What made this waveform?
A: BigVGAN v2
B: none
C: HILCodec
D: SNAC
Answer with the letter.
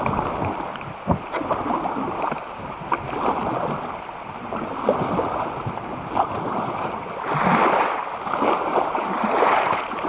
B